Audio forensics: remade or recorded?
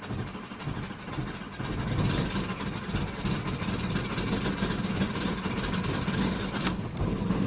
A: recorded